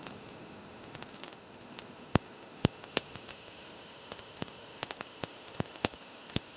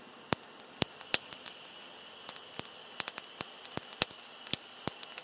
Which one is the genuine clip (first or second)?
second